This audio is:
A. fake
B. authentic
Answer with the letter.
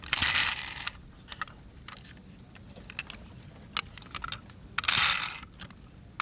B